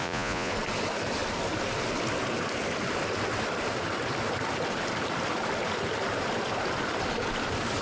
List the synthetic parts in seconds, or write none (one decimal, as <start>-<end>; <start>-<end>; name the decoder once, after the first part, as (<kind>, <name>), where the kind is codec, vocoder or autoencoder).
0.0-0.5 (vocoder, Vocos)